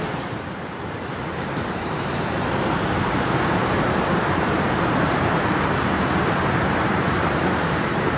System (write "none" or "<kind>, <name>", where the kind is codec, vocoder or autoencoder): vocoder, BigVGAN v2